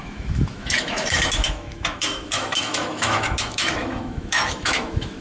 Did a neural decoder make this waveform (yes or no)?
yes